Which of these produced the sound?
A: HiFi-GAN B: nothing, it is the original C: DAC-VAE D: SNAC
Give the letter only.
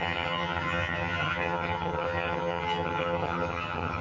A